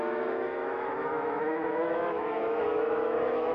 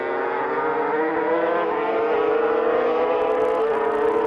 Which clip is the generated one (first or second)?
first